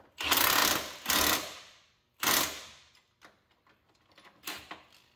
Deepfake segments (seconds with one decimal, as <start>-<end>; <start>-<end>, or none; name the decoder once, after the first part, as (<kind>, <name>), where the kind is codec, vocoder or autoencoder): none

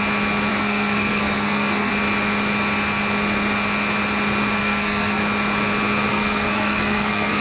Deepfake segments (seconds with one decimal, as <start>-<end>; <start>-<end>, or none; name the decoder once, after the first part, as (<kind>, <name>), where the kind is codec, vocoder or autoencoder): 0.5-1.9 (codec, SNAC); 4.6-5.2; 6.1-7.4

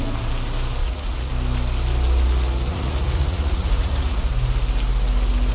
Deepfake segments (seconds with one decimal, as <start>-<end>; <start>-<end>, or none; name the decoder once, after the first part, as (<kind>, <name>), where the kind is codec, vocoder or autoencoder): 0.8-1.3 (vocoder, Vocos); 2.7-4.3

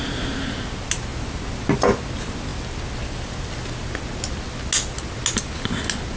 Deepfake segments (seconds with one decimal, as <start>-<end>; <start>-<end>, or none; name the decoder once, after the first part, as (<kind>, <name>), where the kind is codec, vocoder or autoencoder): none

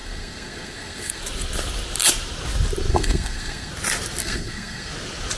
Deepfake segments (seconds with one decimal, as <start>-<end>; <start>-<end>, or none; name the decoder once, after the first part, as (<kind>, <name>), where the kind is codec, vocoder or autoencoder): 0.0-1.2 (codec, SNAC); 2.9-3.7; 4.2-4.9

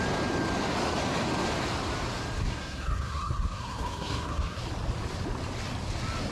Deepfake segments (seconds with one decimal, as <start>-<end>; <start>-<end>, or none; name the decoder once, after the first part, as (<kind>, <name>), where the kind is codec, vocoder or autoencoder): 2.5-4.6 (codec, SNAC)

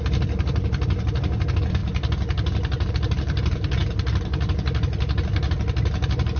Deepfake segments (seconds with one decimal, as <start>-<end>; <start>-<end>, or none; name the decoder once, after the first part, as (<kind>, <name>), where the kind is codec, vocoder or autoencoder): none

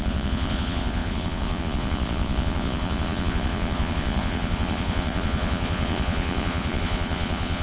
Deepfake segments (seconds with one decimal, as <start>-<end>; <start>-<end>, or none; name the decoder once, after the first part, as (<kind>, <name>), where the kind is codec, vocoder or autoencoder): 0.0-7.6 (vocoder, Vocos)